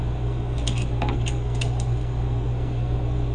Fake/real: fake